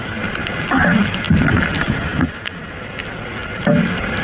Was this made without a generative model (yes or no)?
yes